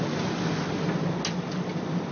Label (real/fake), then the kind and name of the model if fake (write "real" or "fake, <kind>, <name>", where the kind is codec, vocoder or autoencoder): real